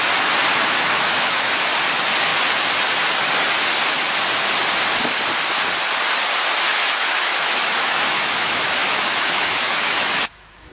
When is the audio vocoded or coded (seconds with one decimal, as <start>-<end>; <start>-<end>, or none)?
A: 0.5-1.5; 6.7-10.7